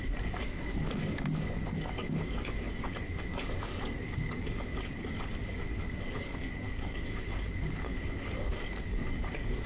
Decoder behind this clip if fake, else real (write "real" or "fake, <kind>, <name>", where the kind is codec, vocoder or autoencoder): fake, codec, DAC